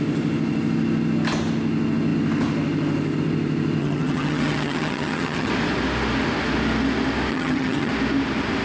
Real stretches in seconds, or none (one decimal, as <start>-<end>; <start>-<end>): 0.0-3.8; 5.5-7.3; 7.9-8.6